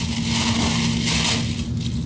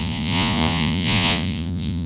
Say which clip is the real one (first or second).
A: first